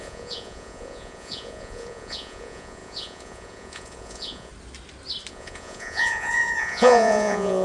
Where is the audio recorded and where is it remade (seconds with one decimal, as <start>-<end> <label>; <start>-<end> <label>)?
0.0-4.5 remade; 4.5-5.3 recorded; 5.3-7.6 remade